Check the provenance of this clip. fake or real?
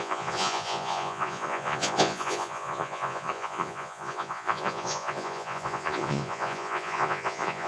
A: fake